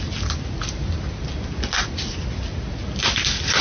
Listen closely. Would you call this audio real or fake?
real